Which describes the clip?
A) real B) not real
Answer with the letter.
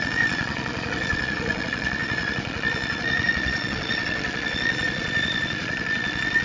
B